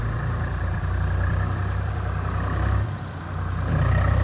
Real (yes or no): no